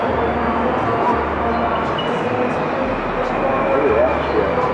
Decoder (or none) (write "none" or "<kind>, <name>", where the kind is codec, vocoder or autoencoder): none